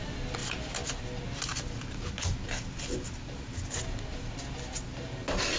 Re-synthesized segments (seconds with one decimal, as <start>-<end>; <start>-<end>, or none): none